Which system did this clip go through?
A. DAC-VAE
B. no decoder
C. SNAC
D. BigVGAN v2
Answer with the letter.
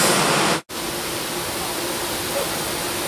B